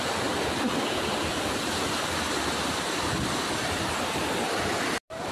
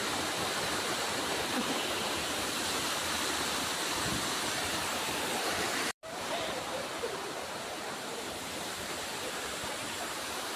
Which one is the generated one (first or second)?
second